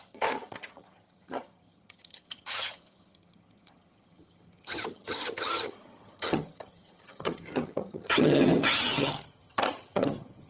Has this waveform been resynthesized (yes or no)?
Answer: yes